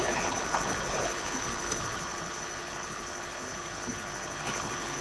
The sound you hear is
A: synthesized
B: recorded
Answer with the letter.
A